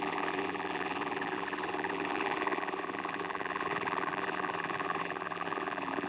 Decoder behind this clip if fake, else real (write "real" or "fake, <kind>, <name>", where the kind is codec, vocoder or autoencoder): fake, vocoder, BigVGAN v2